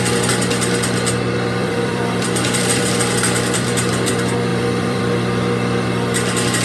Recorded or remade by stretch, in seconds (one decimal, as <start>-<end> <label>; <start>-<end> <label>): 0.0-1.6 recorded; 1.6-4.1 remade; 4.1-4.5 recorded; 4.5-5.0 remade; 5.0-6.6 recorded